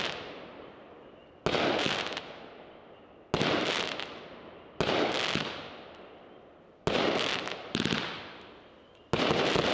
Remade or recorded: recorded